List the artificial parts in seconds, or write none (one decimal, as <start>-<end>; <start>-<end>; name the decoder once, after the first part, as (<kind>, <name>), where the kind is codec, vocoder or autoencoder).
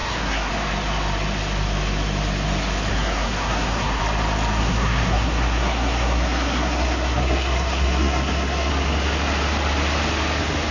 0.0-0.5 (codec, SNAC); 2.9-4.0; 4.6-8.7